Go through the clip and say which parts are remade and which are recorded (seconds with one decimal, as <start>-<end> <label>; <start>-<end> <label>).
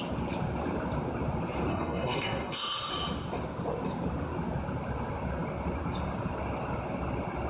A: 0.0-1.7 recorded; 1.7-2.9 remade; 2.9-7.5 recorded